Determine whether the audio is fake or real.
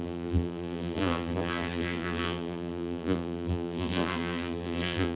fake